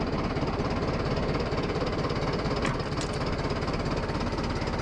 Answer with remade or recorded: recorded